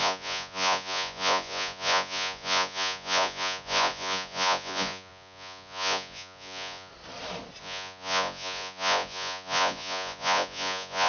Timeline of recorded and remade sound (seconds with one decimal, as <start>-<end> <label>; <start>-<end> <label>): 0.0-6.9 remade; 6.9-7.6 recorded; 7.6-11.1 remade